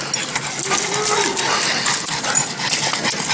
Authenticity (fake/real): real